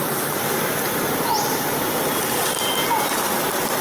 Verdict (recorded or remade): recorded